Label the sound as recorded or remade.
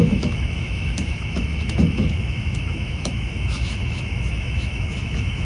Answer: remade